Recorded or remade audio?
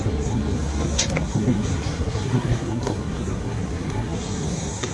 remade